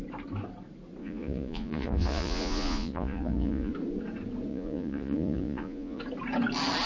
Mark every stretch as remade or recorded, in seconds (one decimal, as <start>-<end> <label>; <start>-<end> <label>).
0.0-1.0 recorded; 1.0-3.7 remade; 3.7-4.5 recorded; 4.5-6.0 remade; 6.0-6.9 recorded